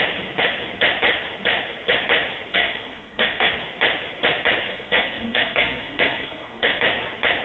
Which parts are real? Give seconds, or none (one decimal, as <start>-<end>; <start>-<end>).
0.0-2.5; 3.5-4.7; 6.8-7.4